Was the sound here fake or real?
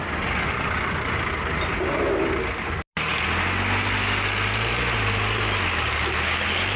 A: real